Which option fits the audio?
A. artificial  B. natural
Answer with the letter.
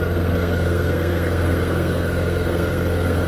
A